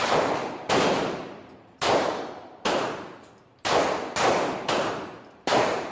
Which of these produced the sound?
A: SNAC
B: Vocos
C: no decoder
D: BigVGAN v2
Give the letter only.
D